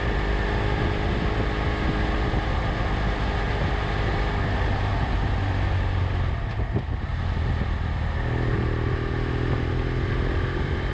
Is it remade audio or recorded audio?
recorded